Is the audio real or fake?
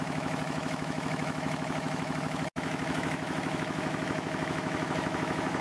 fake